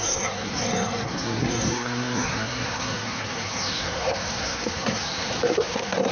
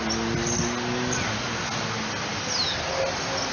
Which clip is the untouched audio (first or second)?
second